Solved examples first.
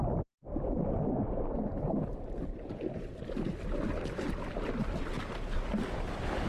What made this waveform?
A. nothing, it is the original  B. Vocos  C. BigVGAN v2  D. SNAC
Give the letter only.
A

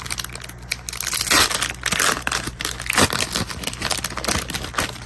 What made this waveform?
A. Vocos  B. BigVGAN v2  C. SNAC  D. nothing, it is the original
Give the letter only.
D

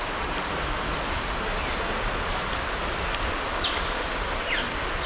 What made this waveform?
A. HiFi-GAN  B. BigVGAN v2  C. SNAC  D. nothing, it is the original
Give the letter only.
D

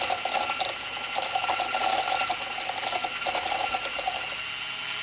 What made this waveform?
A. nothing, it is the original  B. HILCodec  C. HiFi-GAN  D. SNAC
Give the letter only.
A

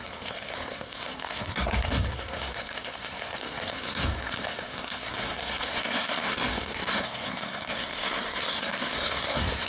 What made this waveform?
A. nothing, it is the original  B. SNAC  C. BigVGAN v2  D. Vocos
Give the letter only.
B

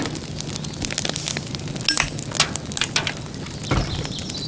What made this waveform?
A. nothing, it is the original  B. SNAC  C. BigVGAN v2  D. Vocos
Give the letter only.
A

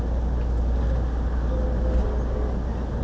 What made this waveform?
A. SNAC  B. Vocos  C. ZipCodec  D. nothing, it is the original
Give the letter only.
D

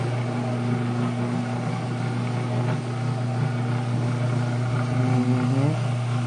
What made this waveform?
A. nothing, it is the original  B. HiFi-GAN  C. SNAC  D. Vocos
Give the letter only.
A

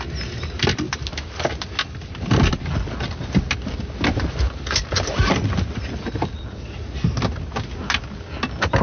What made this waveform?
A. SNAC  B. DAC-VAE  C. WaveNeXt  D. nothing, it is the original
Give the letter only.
D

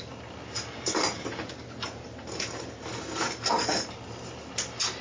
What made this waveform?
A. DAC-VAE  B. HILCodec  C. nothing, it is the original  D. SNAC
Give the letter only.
C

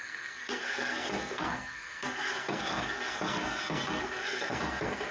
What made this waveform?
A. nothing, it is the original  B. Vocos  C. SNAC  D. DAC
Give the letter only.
C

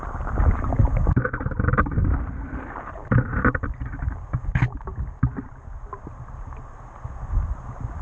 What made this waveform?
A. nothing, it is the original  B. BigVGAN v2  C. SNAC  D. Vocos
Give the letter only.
A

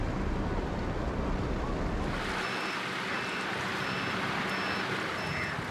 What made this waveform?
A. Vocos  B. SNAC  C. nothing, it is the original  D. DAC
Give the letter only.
C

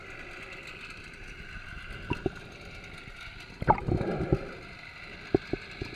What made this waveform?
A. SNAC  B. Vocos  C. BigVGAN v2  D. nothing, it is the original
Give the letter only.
D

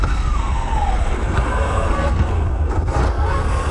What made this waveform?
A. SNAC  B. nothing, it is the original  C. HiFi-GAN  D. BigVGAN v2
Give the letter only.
A